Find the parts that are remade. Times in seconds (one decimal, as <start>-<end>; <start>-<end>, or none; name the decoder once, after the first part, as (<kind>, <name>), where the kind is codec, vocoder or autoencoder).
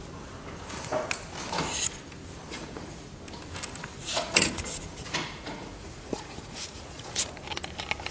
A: 2.5-3.1 (vocoder, Vocos); 4.0-4.6; 5.0-7.3